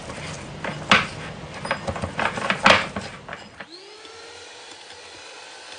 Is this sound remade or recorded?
recorded